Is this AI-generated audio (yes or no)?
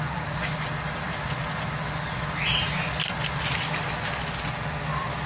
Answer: no